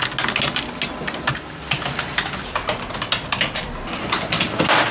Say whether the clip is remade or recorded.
recorded